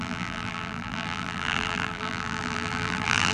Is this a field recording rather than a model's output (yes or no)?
no